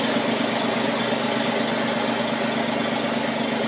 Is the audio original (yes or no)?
yes